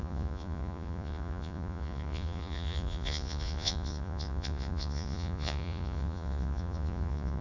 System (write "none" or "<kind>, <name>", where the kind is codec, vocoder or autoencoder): vocoder, Vocos